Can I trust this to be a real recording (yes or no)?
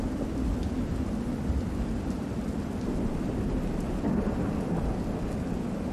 yes